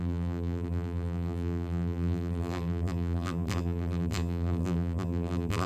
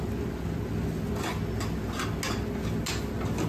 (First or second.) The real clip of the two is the second